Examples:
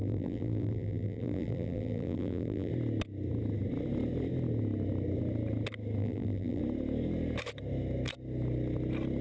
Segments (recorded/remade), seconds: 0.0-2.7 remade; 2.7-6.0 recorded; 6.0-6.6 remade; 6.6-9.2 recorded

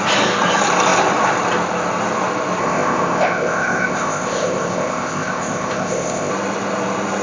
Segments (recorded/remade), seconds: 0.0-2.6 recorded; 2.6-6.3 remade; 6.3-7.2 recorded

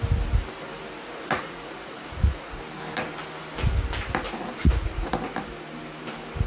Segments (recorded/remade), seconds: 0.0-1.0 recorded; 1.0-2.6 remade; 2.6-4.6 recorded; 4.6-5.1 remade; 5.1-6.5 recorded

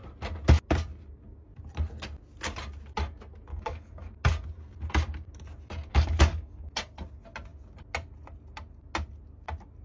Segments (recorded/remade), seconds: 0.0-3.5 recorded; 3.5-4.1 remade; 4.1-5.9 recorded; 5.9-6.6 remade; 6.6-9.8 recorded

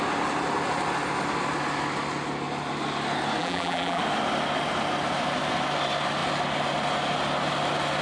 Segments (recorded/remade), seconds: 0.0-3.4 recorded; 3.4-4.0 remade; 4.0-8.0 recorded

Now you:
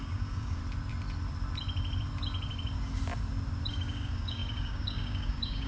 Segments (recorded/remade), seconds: 0.0-0.6 remade; 0.6-3.7 recorded; 3.7-5.7 remade

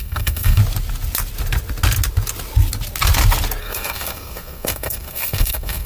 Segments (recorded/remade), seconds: 0.0-0.6 remade; 0.6-3.6 recorded; 3.6-5.9 remade